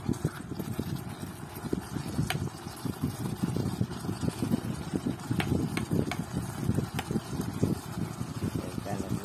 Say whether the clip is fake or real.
real